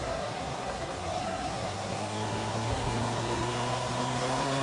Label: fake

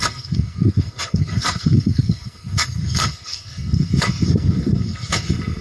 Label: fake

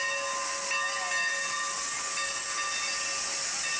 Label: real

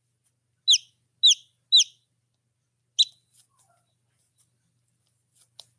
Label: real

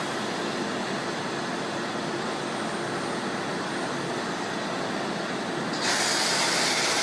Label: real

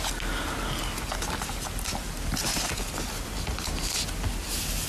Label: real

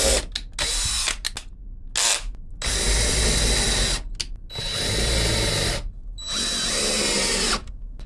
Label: real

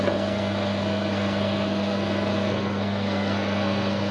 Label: fake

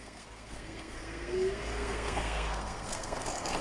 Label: fake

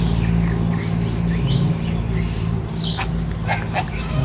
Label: real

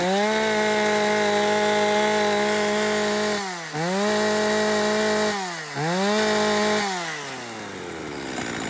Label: real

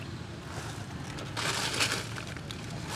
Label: real